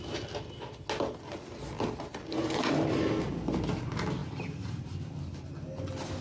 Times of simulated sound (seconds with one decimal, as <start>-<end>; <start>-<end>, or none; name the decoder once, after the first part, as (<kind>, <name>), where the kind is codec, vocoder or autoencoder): 2.1-3.0 (vocoder, BigVGAN v2); 4.2-4.9